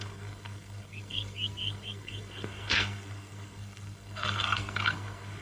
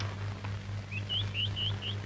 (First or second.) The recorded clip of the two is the second